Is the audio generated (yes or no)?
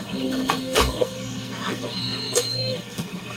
yes